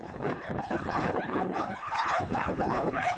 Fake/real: fake